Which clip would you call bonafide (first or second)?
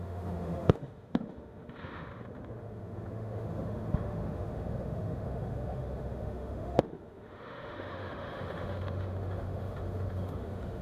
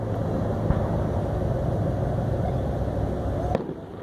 second